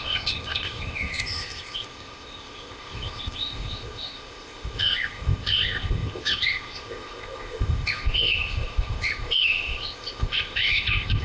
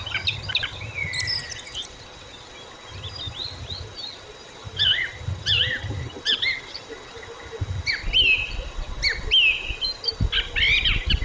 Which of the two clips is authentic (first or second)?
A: second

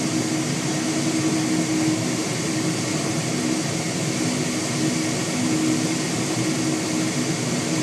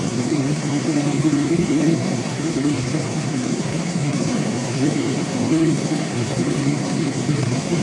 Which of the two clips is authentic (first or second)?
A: first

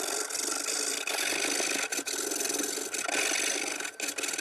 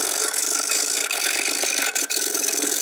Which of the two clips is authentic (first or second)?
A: first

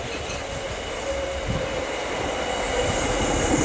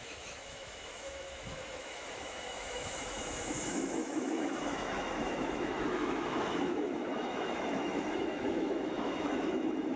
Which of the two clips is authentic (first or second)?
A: first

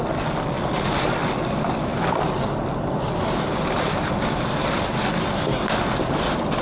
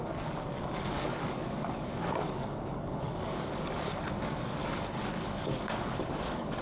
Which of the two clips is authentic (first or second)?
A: first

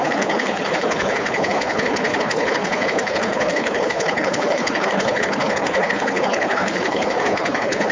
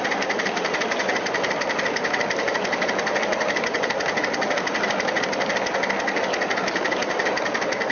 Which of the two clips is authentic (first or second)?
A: second